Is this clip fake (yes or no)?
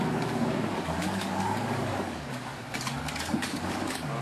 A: yes